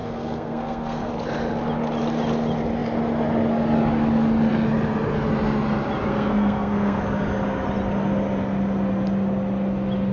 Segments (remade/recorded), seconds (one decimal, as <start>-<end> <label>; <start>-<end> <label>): 0.0-1.1 remade; 1.1-6.1 recorded; 6.1-7.0 remade; 7.0-10.1 recorded